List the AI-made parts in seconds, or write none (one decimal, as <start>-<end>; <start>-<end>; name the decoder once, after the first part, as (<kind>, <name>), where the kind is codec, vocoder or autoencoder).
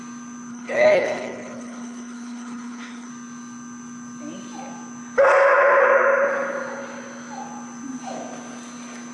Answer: 0.5-3.1 (codec, HILCodec)